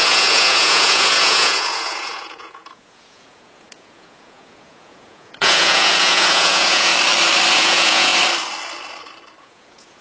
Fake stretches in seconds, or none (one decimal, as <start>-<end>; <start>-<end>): 0.0-6.9; 7.5-8.1; 9.4-10.0